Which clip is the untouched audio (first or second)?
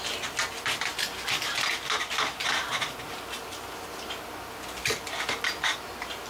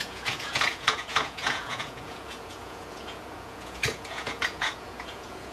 first